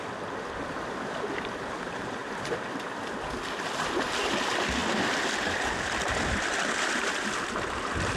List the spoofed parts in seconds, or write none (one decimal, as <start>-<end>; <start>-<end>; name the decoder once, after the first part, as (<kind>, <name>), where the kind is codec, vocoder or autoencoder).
none